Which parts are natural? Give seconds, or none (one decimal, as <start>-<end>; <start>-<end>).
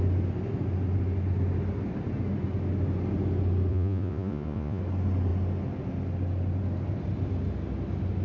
0.0-3.7; 4.8-8.2